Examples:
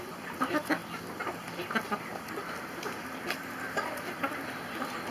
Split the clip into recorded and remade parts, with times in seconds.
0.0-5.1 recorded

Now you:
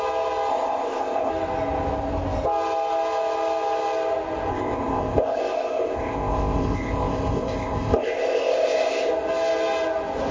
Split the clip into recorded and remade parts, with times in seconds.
0.0-0.5 recorded; 0.5-1.3 remade; 1.3-4.5 recorded; 4.5-9.1 remade; 9.1-10.3 recorded